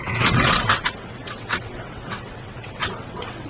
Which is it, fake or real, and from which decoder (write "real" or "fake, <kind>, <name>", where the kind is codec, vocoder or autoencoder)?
fake, vocoder, WaveNeXt